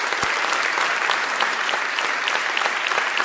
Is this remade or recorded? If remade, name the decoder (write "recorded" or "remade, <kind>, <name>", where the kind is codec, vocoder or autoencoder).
remade, vocoder, BigVGAN v2